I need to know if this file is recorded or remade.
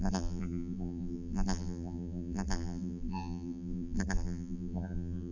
remade